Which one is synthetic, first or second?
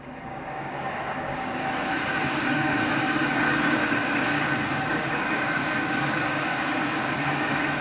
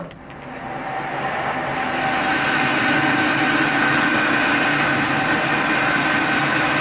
first